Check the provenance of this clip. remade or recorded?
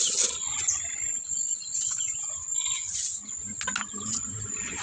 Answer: recorded